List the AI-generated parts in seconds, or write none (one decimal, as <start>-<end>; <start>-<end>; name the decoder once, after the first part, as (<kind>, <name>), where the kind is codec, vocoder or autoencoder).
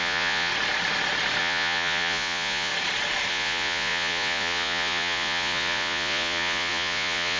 0.0-0.5 (vocoder, Vocos); 1.4-2.7; 3.3-7.4